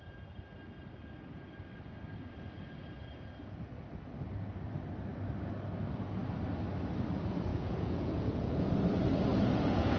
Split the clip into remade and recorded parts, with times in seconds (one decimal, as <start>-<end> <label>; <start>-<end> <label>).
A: 0.0-7.5 recorded; 7.5-8.7 remade; 8.7-9.3 recorded; 9.3-10.0 remade